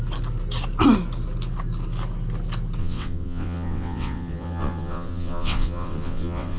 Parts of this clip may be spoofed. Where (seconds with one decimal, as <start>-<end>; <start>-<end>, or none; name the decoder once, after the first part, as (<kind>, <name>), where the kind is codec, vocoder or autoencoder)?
2.8-6.6 (vocoder, WaveNeXt)